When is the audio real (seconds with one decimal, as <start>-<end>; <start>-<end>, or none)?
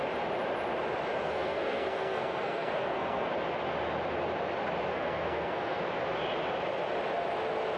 0.0-1.1; 3.3-4.9; 5.8-7.8